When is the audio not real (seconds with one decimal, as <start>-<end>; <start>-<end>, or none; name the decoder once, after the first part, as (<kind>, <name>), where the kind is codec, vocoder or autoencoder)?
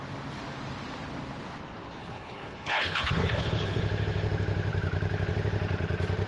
2.0-3.8 (codec, HILCodec)